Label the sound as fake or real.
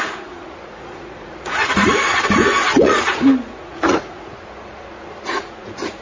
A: fake